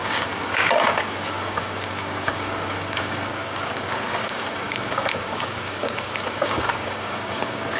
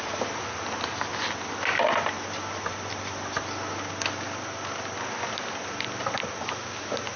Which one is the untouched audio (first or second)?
second